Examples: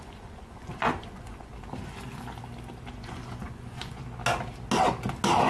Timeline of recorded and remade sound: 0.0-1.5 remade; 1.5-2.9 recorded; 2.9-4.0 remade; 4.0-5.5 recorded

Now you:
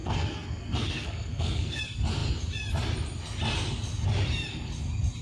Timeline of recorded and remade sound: 0.0-1.8 remade; 1.8-5.2 recorded

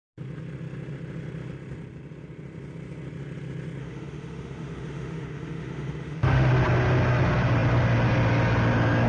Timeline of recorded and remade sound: 0.0-3.8 recorded; 3.8-6.5 remade; 6.5-9.1 recorded

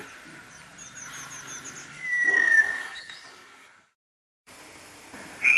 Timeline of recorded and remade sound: 0.0-1.8 recorded; 1.8-4.5 remade; 4.5-5.6 recorded

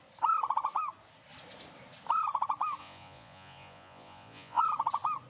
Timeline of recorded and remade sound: 0.0-2.8 recorded; 2.8-4.6 remade; 4.6-5.3 recorded